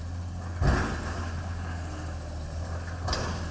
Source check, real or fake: real